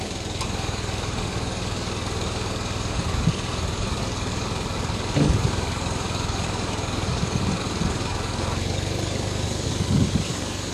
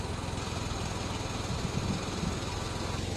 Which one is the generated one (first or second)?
first